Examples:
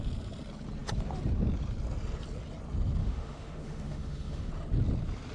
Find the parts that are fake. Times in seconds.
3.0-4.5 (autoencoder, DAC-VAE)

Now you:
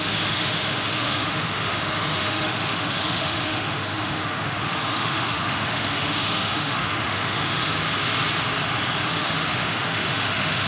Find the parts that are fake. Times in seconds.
0.0-7.8 (autoencoder, DAC-VAE); 9.1-10.7

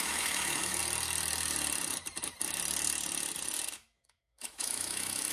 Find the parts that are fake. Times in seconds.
0.0-0.8 (autoencoder, DAC-VAE); 3.7-5.3

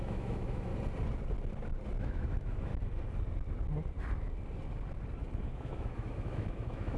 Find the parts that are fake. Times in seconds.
0.0-0.7 (autoencoder, DAC-VAE); 2.0-2.7; 5.4-7.0